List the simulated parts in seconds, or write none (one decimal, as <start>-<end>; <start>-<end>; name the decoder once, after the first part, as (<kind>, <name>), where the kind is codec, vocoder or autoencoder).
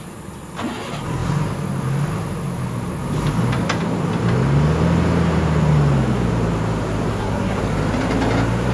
7.1-7.6 (codec, SNAC)